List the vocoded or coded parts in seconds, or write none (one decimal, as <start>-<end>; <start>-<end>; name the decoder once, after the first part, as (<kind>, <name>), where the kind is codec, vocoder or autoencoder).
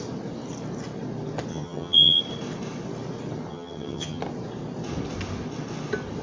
1.5-2.2 (vocoder, HiFi-GAN); 3.5-4.2